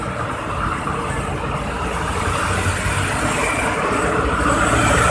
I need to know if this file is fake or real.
real